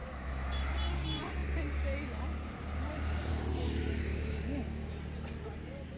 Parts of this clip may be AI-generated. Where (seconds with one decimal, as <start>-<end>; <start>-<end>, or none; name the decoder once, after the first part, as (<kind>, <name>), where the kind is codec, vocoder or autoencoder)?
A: 0.0-0.6 (autoencoder, DAC-VAE); 4.1-4.9